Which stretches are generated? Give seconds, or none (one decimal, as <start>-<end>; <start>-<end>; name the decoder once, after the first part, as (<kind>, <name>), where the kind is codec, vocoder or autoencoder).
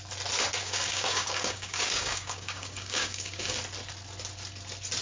0.6-3.6 (codec, DAC)